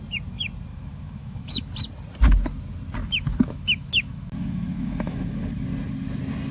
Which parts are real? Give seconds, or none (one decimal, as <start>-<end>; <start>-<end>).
0.0-0.7; 1.7-3.0; 5.4-6.5